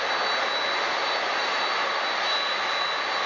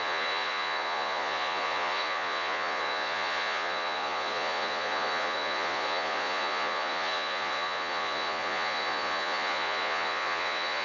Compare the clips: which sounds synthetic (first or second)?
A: second